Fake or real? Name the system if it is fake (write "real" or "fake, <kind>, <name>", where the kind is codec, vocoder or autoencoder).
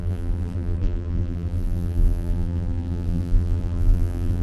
fake, vocoder, BigVGAN v2